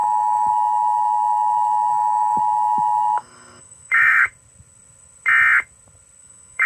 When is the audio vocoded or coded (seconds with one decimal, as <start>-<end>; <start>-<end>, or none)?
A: 0.5-1.9; 2.4-4.3; 6.2-6.7